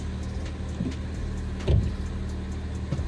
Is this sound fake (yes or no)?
no